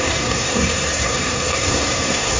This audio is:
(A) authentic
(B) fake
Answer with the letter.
B